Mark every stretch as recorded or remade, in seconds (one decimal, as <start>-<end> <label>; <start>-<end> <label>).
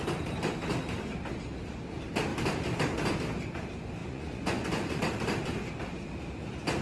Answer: 0.0-4.0 recorded; 4.0-5.0 remade; 5.0-6.8 recorded